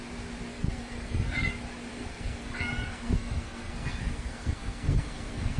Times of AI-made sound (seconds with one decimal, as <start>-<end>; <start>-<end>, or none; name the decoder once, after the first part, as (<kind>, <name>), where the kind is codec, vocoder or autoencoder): 0.5-1.5 (codec, SNAC); 1.9-5.6

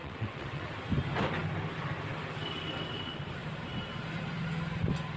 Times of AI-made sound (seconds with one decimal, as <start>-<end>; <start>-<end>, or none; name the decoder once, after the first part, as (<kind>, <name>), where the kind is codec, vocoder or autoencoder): 0.0-0.7 (vocoder, WaveNeXt)

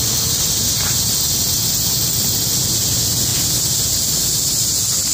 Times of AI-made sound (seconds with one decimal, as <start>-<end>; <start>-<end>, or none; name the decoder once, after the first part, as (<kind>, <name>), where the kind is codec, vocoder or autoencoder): none

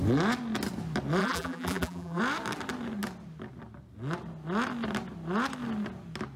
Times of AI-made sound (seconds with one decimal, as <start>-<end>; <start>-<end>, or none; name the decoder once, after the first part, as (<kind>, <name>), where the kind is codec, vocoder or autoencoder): 1.2-2.2 (vocoder, BigVGAN v2)

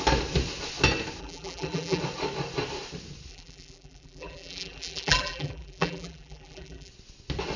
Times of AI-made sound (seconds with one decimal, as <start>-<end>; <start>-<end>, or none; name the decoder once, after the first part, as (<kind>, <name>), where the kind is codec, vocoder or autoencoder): 1.2-2.0 (vocoder, BigVGAN v2); 3.3-6.9

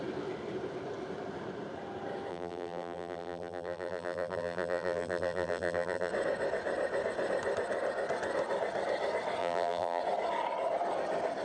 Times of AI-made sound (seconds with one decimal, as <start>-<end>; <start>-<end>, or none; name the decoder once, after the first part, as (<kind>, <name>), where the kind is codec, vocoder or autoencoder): 2.3-6.1 (vocoder, BigVGAN v2); 9.4-10.0

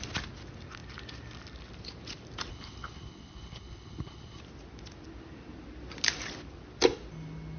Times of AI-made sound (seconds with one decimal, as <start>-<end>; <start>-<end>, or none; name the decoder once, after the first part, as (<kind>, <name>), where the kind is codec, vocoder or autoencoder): 2.5-4.4 (codec, HILCodec)